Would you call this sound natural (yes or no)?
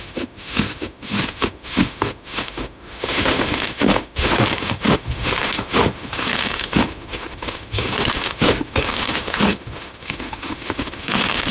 no